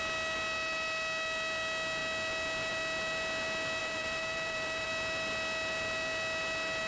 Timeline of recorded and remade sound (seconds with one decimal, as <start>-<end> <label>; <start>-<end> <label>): 0.0-3.8 recorded; 3.8-4.9 remade; 4.9-6.9 recorded